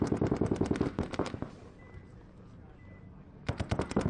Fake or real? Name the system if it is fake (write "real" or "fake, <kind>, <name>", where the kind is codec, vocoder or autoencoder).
real